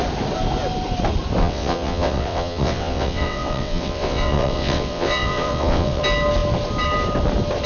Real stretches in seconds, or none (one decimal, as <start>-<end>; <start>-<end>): 0.0-1.4; 6.0-7.7